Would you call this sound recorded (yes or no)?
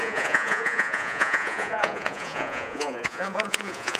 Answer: no